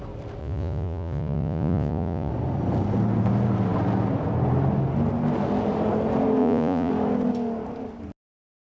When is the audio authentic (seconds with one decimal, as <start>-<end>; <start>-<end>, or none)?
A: 0.0-0.4; 2.3-6.4; 6.9-8.8